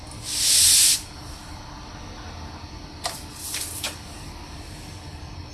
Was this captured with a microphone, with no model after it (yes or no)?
yes